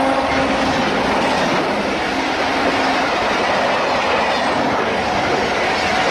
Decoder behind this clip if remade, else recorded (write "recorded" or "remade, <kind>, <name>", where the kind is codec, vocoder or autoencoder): recorded